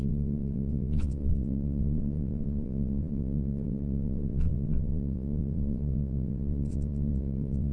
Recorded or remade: remade